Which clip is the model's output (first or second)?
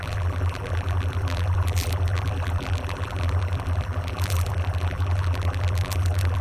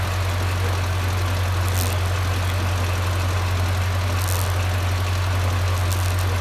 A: first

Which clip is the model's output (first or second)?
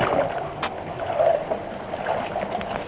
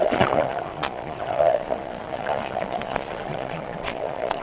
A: second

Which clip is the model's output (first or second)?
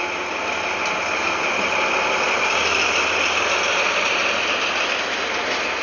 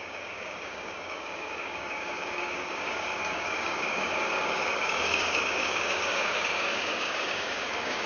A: second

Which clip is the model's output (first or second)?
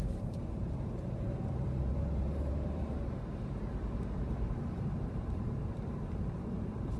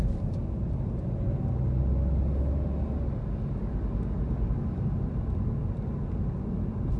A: first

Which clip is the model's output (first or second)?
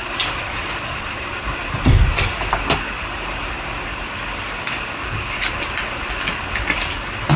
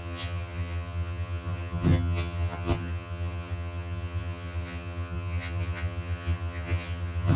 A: second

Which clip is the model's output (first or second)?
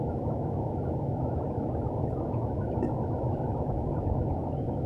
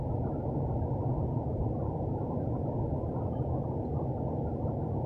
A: first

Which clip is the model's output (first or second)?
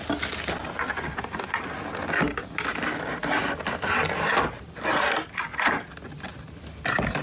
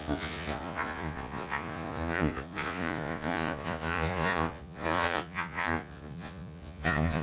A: second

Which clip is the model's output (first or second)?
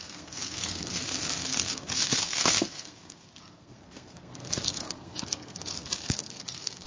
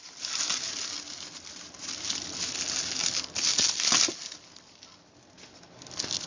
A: first